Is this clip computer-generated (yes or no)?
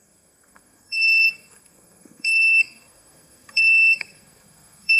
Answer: yes